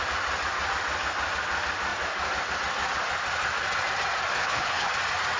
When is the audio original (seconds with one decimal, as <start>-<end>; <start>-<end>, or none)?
0.0-4.3; 4.9-5.4